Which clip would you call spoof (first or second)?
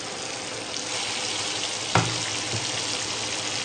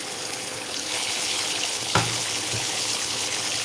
second